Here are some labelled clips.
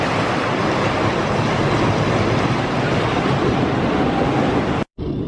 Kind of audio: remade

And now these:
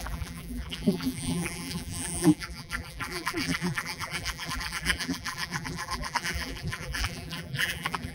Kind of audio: remade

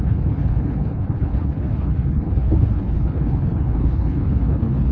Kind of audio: remade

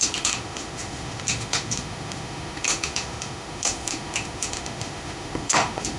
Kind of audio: remade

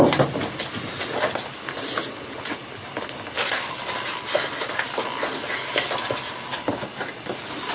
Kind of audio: recorded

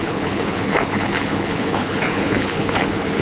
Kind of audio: remade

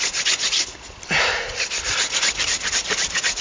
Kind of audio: recorded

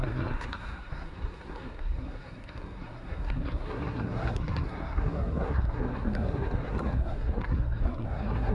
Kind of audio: remade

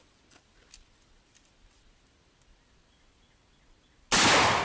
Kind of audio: recorded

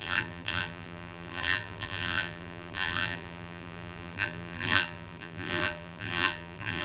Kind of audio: remade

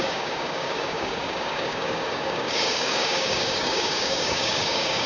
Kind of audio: remade